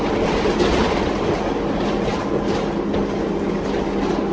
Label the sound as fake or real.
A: real